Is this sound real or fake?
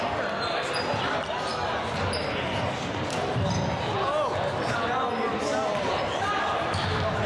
real